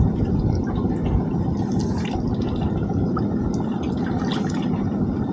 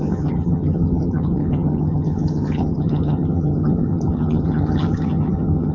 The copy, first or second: second